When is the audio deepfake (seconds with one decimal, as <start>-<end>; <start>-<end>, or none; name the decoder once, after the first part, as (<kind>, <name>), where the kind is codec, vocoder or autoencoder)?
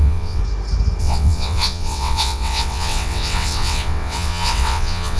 0.0-0.4 (vocoder, WaveNeXt); 1.0-5.2